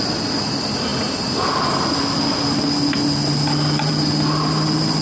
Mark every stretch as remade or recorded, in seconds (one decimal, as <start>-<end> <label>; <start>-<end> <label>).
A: 0.0-5.0 recorded